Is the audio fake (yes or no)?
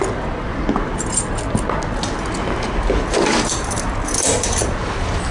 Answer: no